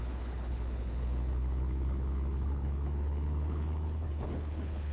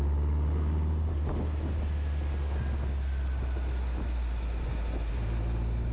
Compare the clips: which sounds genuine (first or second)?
second